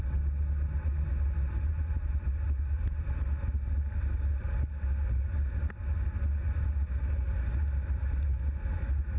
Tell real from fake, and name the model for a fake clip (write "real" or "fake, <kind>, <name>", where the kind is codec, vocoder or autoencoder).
real